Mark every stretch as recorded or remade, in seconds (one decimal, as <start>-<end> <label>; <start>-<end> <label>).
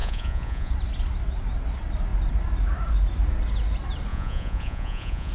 0.0-0.7 remade; 0.7-4.1 recorded; 4.1-5.3 remade